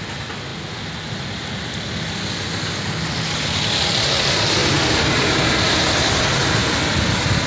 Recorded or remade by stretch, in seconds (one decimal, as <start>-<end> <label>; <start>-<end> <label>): 0.0-7.5 recorded